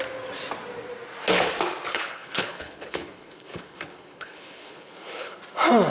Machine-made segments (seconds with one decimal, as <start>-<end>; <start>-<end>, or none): 1.9-5.4